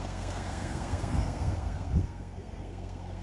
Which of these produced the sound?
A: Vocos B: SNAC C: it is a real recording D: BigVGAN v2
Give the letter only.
B